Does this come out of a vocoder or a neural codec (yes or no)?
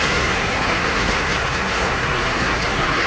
yes